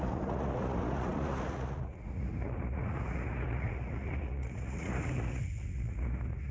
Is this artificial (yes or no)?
yes